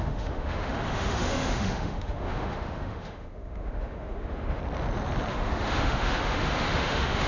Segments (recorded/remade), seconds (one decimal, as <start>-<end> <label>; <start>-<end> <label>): 0.0-4.6 remade; 4.6-5.3 recorded; 5.3-7.3 remade